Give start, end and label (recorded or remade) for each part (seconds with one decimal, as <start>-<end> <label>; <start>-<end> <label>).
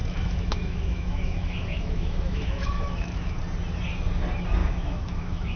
0.0-3.4 remade; 3.4-4.6 recorded; 4.6-5.6 remade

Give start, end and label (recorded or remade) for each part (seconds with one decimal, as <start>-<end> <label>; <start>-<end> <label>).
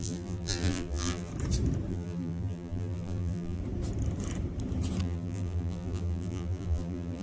0.0-1.3 remade; 1.3-1.9 recorded; 1.9-3.6 remade; 3.6-5.0 recorded; 5.0-7.2 remade